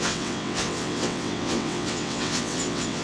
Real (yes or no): no